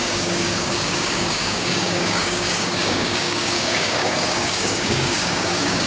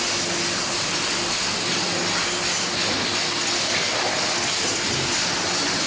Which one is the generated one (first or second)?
first